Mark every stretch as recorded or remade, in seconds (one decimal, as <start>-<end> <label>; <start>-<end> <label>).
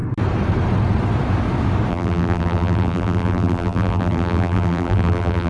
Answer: 0.0-1.9 recorded; 1.9-5.5 remade